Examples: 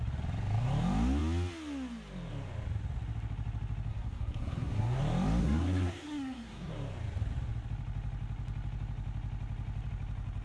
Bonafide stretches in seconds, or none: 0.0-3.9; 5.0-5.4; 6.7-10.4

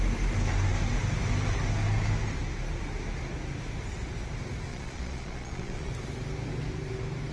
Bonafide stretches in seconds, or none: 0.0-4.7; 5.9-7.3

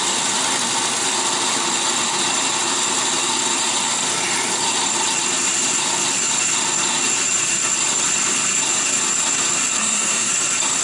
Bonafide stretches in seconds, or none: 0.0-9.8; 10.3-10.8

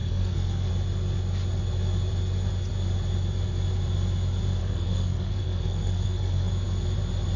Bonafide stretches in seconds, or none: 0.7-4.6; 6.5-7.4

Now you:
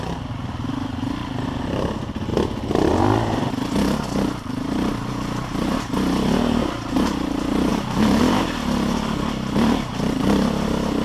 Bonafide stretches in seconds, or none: 0.0-7.7; 8.2-11.0

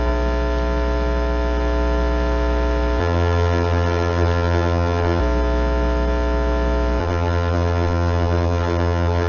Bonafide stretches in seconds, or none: 0.0-3.0; 5.2-7.0

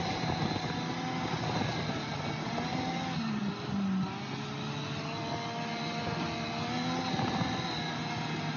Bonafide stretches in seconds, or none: 0.0-8.6

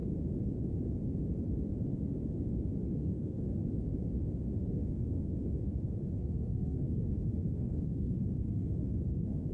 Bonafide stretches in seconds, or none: 0.0-3.0; 3.6-4.7; 5.6-6.2